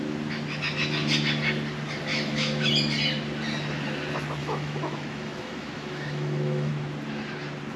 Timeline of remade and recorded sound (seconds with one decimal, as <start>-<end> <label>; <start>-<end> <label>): 0.0-2.1 recorded; 2.1-2.7 remade; 2.7-4.4 recorded; 4.4-6.7 remade; 6.7-7.8 recorded